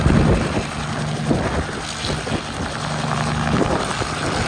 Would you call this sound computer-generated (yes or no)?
no